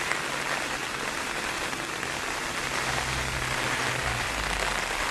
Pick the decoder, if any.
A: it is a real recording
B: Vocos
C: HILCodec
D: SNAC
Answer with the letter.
A